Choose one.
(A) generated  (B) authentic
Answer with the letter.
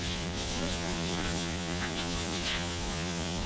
A